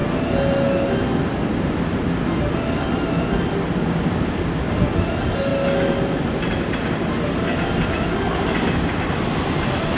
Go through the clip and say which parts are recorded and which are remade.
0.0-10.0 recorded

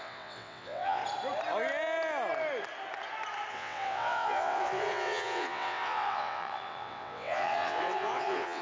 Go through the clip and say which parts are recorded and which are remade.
0.0-1.0 remade; 1.0-3.5 recorded; 3.5-8.6 remade

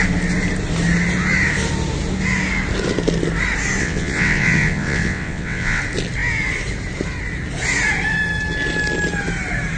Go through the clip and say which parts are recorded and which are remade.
0.0-3.8 recorded; 3.8-5.8 remade; 5.8-9.8 recorded

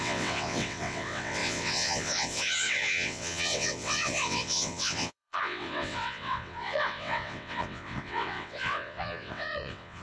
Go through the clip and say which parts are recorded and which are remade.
0.0-10.0 remade

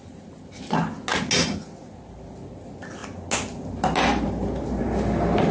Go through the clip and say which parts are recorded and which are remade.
0.0-5.5 recorded

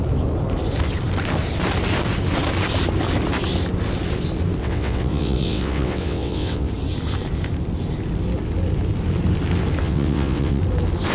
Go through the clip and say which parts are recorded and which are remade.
0.0-4.6 recorded; 4.6-6.7 remade; 6.7-9.8 recorded; 9.8-10.6 remade; 10.6-11.1 recorded

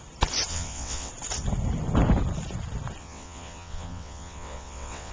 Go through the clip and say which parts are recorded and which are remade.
0.0-0.5 recorded; 0.5-1.1 remade; 1.1-3.0 recorded; 3.0-5.1 remade

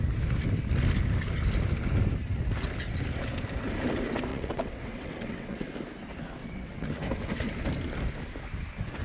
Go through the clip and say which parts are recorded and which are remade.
0.0-4.3 recorded; 4.3-5.7 remade; 5.7-6.4 recorded; 6.4-6.9 remade; 6.9-9.0 recorded